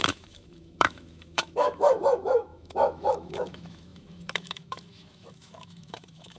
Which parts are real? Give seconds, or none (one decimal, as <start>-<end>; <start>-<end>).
none